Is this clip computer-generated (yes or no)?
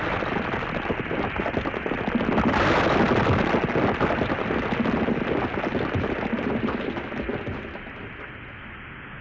no